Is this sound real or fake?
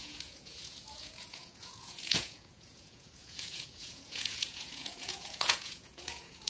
fake